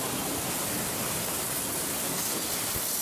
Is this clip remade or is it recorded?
recorded